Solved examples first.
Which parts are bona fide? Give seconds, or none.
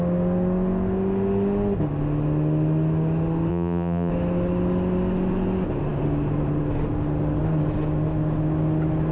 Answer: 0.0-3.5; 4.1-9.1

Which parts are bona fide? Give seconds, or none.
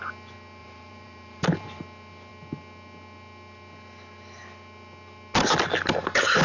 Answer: 0.0-0.6; 1.8-6.4